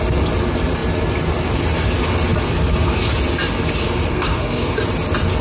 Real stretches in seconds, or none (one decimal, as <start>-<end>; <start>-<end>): 0.0-4.1; 4.8-5.4